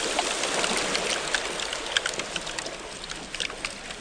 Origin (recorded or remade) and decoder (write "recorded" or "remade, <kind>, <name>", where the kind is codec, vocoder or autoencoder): recorded